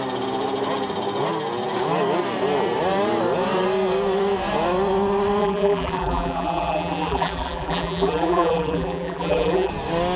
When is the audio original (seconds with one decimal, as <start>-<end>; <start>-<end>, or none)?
0.0-5.4; 9.7-10.2